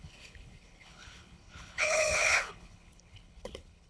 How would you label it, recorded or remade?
remade